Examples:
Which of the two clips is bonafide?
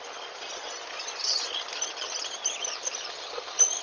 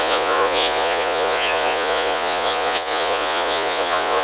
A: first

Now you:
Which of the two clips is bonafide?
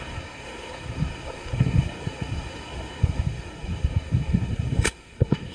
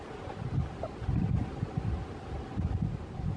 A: second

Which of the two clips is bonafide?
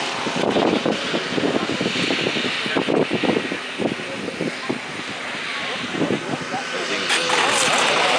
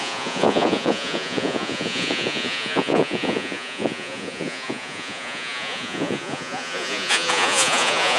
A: first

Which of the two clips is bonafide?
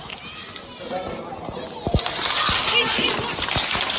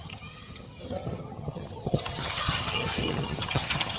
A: first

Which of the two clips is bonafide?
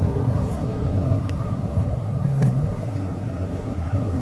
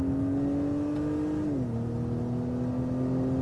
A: second